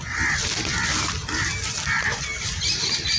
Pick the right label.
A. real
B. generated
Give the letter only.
A